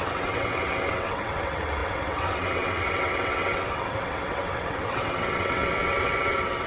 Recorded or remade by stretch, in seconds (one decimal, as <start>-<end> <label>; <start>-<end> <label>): 0.0-6.7 remade